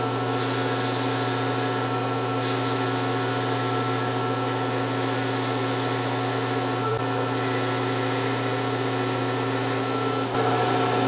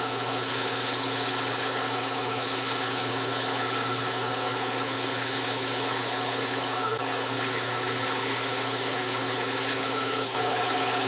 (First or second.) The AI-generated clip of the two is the second